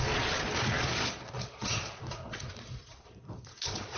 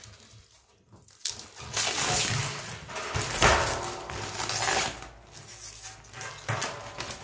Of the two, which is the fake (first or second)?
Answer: first